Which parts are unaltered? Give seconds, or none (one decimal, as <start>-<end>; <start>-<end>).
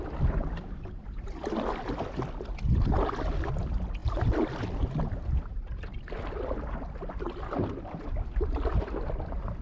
0.0-4.0; 4.5-9.6